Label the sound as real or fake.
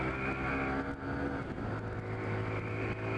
real